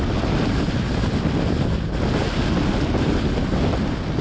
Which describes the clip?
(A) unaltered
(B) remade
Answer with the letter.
A